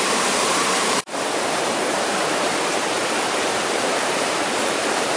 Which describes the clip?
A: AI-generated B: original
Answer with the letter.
A